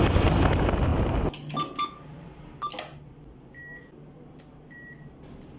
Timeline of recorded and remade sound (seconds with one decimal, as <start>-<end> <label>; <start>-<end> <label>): 0.0-5.6 recorded